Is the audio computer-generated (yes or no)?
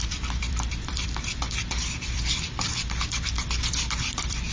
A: yes